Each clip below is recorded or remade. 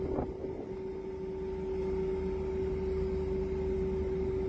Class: recorded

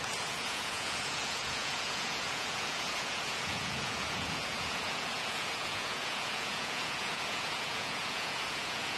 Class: remade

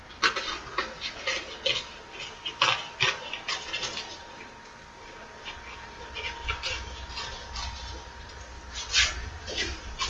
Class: recorded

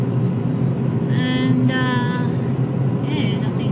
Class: recorded